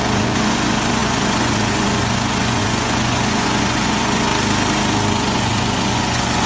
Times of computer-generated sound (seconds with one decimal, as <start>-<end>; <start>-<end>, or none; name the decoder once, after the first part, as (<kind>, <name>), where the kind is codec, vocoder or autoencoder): 0.0-4.3 (vocoder, Vocos); 5.1-6.5